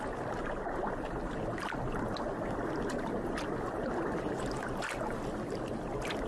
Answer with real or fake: real